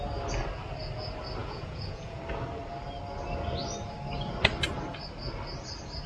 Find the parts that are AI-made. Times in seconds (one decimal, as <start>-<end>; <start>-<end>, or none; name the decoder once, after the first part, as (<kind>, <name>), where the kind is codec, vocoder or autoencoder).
1.4-2.2 (vocoder, Vocos)